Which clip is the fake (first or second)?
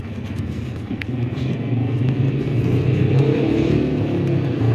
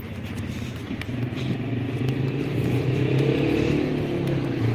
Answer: first